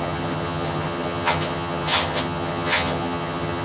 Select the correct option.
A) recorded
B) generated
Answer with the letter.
B